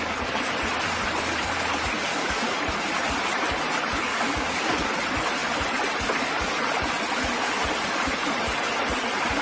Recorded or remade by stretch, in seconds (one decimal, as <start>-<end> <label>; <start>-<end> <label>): 0.0-2.1 recorded; 2.1-2.6 remade; 2.6-4.1 recorded; 4.1-4.9 remade; 4.9-9.4 recorded